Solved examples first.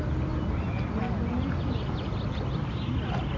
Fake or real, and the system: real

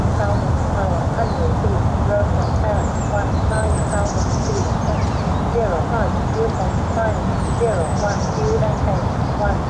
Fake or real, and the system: real